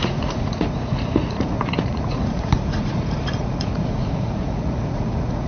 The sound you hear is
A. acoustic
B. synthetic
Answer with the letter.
B